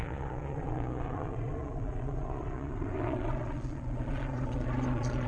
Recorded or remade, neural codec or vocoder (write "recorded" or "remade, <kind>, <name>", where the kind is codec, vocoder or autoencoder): remade, vocoder, Vocos